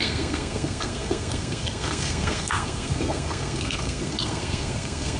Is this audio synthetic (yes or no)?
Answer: yes